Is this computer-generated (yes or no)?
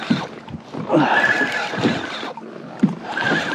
no